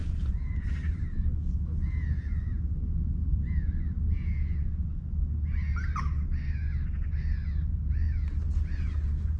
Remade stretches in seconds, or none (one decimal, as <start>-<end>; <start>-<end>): 0.0-1.0